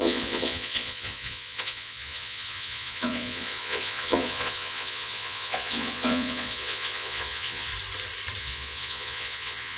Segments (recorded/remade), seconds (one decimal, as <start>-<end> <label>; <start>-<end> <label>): 0.0-7.7 remade; 7.7-8.4 recorded; 8.4-9.8 remade